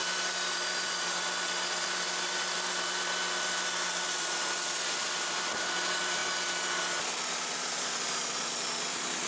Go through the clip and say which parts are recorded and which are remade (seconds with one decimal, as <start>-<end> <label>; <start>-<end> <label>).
0.0-6.2 remade; 6.2-7.5 recorded; 7.5-9.3 remade